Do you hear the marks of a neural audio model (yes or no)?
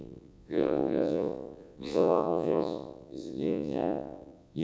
yes